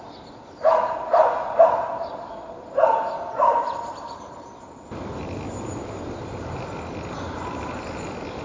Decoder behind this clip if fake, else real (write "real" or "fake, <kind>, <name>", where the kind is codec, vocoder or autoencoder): fake, vocoder, BigVGAN v2